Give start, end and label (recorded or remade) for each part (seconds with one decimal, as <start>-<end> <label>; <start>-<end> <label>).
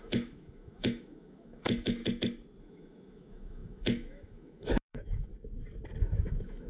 0.0-2.0 remade; 2.0-2.6 recorded; 2.6-5.3 remade; 5.3-6.0 recorded; 6.0-6.7 remade